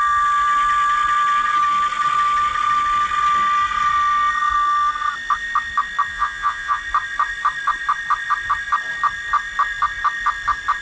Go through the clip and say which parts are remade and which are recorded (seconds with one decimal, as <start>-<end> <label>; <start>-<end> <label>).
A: 0.0-6.1 recorded; 6.1-6.8 remade; 6.8-10.8 recorded